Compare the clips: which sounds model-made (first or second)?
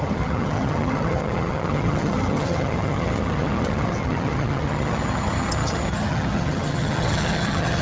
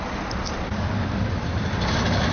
first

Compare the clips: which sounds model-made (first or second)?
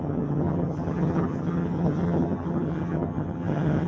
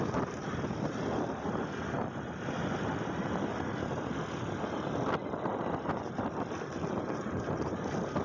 first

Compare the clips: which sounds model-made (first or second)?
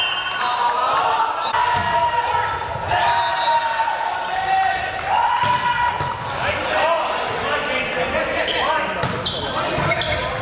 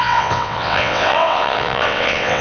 second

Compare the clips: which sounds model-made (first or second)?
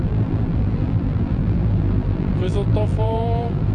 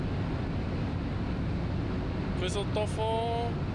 first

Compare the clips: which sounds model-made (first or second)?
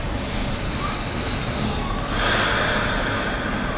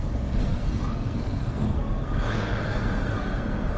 second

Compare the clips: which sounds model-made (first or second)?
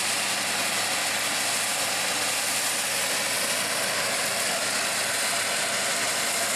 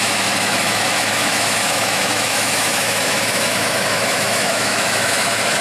second